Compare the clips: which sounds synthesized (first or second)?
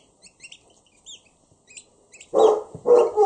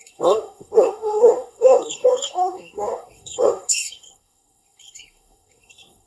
second